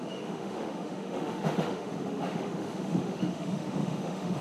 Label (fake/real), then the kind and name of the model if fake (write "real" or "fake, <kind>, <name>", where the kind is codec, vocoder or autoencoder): fake, autoencoder, DAC-VAE